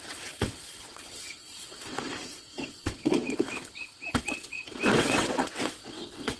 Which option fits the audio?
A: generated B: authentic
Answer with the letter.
A